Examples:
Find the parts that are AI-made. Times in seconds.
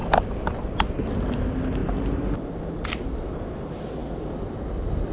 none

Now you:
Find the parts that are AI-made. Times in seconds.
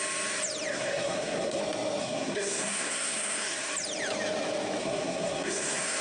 0.7-1.6 (codec, SNAC); 2.0-3.7; 4.8-6.0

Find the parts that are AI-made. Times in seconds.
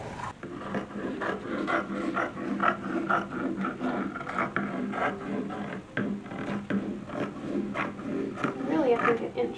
none